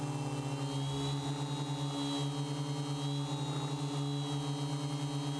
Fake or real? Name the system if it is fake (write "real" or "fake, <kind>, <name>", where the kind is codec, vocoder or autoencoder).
real